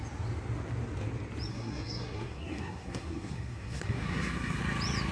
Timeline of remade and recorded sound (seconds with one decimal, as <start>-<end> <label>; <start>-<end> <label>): 0.0-1.5 recorded; 1.5-4.6 remade; 4.6-5.1 recorded